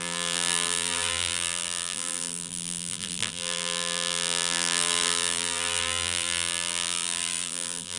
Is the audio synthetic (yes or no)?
yes